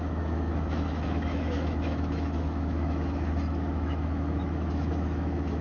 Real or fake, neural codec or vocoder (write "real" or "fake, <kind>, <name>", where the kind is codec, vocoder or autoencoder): fake, autoencoder, DAC-VAE